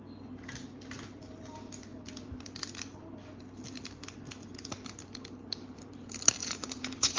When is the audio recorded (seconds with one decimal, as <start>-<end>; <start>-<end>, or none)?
0.0-6.4